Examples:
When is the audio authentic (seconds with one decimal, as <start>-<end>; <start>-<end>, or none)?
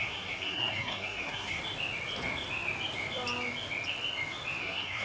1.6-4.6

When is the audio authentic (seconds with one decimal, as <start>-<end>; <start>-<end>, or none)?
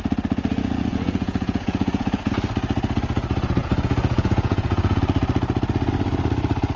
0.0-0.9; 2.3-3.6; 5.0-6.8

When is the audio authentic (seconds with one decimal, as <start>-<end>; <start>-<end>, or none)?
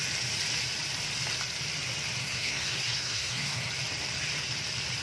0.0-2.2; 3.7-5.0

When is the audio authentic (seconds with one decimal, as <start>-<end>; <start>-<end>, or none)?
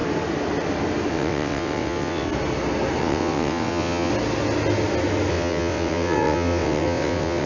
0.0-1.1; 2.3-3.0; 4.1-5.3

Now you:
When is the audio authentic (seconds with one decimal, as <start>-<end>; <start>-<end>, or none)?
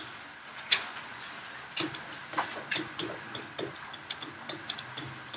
0.0-0.5; 1.3-2.5; 3.4-5.4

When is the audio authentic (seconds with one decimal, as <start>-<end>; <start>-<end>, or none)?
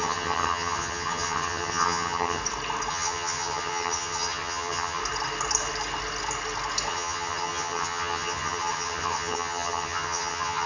2.4-2.9; 5.0-6.9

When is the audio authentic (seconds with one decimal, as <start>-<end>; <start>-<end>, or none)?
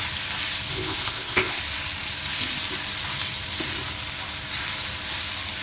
0.0-0.7; 1.6-5.6